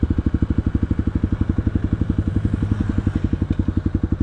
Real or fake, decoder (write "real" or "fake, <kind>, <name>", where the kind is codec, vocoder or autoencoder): real